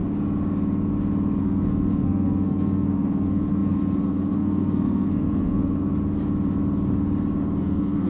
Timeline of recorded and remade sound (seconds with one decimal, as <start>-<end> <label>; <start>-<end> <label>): 0.0-1.4 recorded; 1.4-5.9 remade; 5.9-7.6 recorded; 7.6-8.1 remade